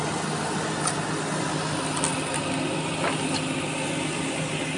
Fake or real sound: real